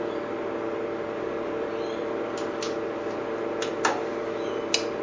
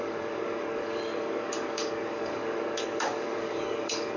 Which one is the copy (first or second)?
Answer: second